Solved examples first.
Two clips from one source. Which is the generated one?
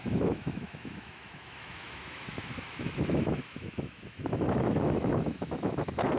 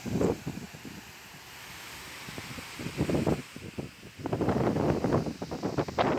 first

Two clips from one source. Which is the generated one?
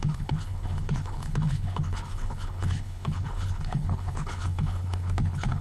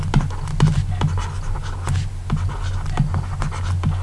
first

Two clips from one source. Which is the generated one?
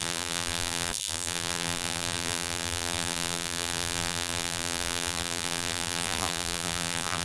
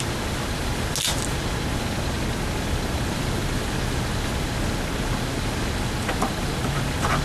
first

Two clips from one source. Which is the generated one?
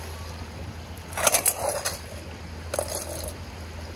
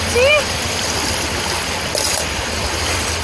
second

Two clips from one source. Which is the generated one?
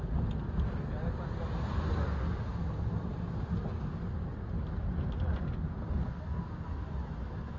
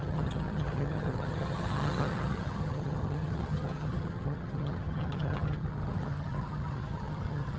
second